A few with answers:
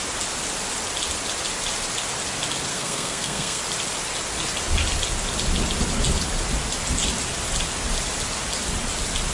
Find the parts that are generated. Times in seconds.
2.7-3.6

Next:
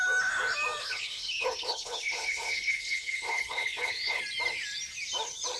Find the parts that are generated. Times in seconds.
0.8-4.2

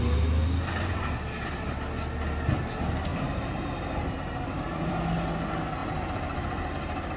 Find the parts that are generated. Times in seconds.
3.1-4.9; 5.8-6.7

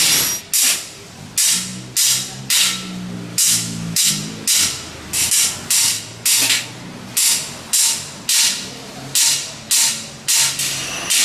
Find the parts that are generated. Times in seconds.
3.3-4.1

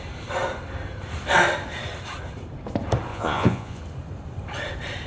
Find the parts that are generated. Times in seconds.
3.1-3.8

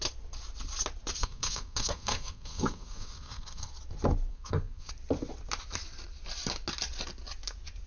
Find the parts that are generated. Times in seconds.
1.2-3.7; 4.3-4.9

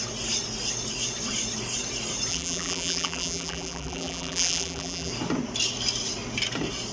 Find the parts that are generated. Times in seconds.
2.3-5.1